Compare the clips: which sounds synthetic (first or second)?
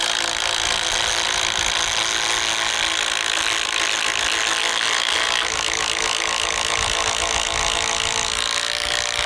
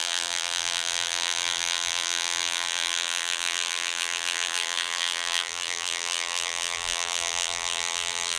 second